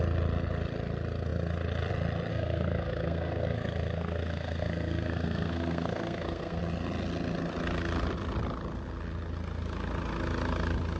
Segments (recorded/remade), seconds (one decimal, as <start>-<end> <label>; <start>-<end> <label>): 0.0-2.3 recorded; 2.3-6.6 remade; 6.6-11.0 recorded